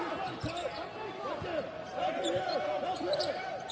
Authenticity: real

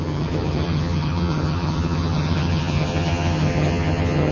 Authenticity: fake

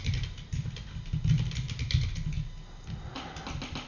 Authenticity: real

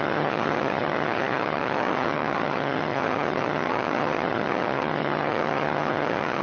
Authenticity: fake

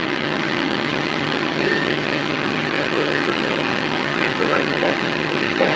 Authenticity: fake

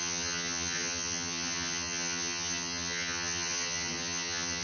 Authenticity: fake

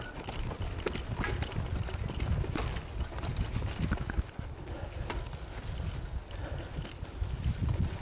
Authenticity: real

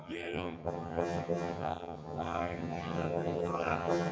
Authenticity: fake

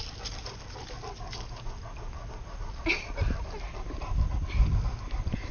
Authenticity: real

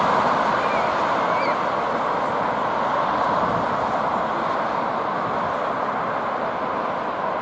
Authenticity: real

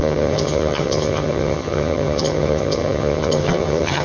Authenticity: fake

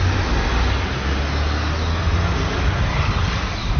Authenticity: real